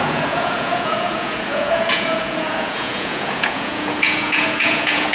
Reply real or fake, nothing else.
fake